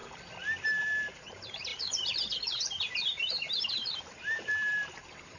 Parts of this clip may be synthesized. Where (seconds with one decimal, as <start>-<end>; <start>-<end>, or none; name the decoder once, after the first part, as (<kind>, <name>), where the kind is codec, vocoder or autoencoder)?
0.8-5.4 (vocoder, BigVGAN v2)